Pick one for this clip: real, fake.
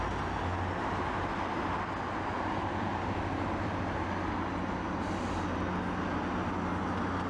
real